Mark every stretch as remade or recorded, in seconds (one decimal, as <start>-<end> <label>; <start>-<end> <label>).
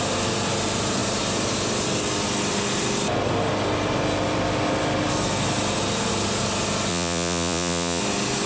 0.0-6.9 recorded; 6.9-8.0 remade; 8.0-8.5 recorded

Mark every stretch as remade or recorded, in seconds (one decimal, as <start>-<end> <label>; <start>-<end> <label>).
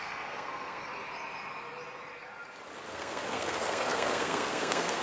0.0-0.8 remade; 0.8-2.9 recorded; 2.9-5.0 remade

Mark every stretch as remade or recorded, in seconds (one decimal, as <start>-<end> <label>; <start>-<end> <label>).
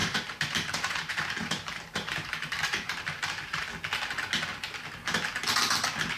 0.0-3.7 remade; 3.7-6.2 recorded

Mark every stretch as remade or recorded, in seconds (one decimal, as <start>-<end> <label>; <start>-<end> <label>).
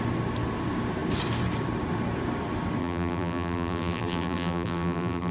0.0-2.8 recorded; 2.8-5.3 remade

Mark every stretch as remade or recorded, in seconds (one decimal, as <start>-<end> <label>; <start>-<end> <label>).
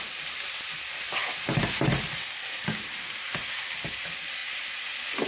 0.0-5.3 recorded